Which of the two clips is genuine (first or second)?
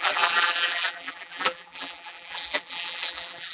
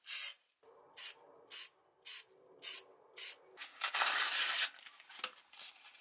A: second